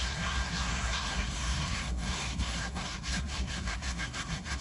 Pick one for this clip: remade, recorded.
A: remade